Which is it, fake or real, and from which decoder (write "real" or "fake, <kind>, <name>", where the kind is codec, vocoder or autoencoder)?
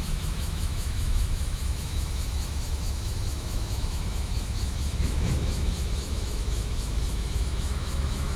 fake, autoencoder, DAC-VAE